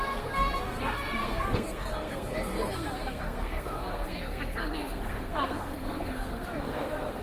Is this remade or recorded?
remade